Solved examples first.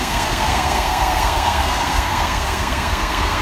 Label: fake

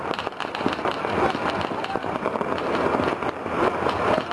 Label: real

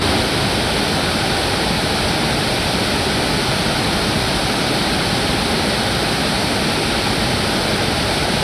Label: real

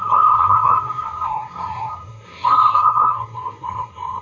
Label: fake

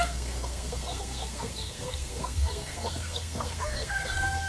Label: fake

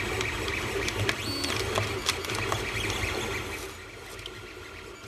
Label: real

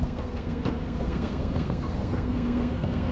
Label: fake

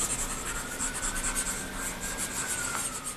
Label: real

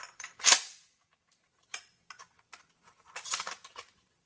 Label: real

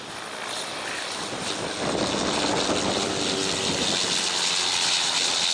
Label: real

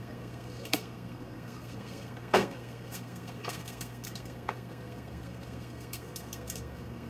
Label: fake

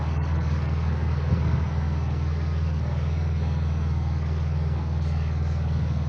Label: fake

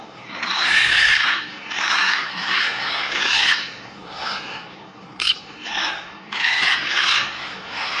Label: fake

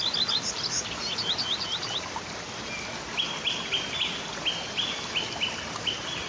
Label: real